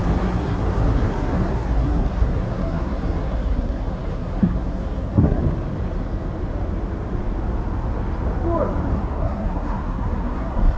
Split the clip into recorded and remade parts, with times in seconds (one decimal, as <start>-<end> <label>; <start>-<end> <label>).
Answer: 0.0-5.4 remade; 5.4-8.9 recorded; 8.9-10.8 remade